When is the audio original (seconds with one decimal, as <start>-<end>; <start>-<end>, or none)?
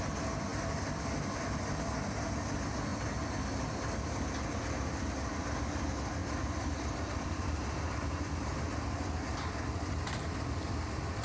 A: 0.0-0.5; 1.6-6.2; 8.3-11.2